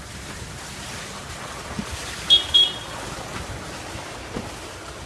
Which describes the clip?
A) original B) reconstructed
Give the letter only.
A